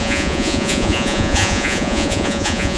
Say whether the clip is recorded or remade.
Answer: remade